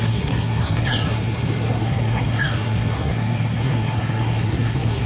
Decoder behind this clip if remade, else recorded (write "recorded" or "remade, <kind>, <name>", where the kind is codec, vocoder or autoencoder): remade, codec, SNAC